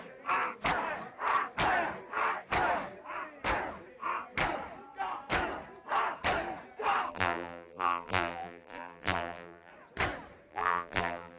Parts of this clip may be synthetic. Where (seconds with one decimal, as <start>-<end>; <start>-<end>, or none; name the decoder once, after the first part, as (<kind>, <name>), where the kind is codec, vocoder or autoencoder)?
7.1-9.7 (vocoder, BigVGAN v2); 10.5-11.4

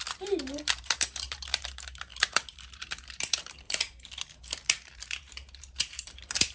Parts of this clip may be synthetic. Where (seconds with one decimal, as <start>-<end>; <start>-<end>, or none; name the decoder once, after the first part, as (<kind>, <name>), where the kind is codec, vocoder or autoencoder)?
0.0-6.5 (vocoder, BigVGAN v2)